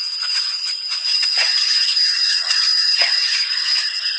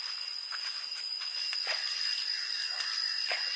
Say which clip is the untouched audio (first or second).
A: second